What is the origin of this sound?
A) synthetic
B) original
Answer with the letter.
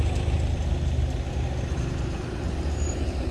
B